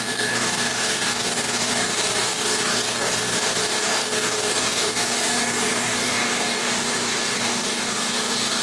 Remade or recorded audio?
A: remade